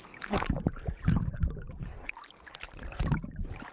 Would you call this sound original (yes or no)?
no